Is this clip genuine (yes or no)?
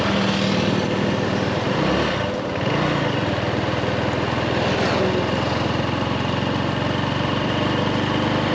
yes